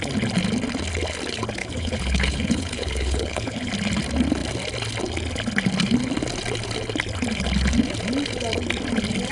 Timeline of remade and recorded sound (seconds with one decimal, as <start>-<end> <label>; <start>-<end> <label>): 0.0-1.6 recorded; 1.6-3.7 remade; 3.7-9.3 recorded